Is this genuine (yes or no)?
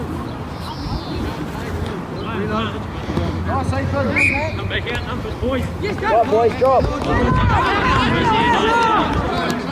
yes